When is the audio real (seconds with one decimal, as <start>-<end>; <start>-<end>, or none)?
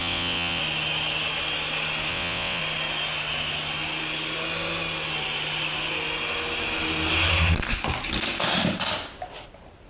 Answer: 0.6-2.1; 2.6-9.9